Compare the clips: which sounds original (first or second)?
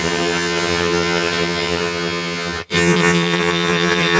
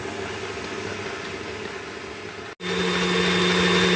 second